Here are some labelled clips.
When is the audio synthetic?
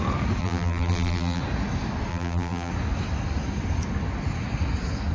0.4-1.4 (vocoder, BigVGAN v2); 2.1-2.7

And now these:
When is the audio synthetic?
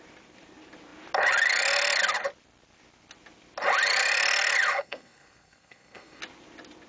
4.7-6.2 (codec, SNAC)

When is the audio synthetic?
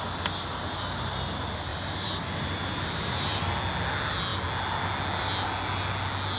1.7-3.4 (vocoder, BigVGAN v2)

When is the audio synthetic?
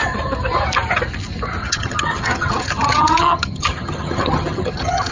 1.6-5.1 (vocoder, HiFi-GAN)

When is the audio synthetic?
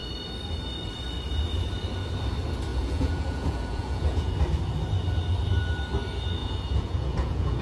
2.7-4.3 (vocoder, Vocos); 6.4-7.6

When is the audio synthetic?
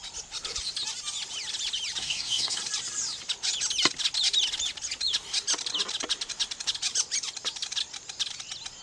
2.0-2.6 (codec, SNAC)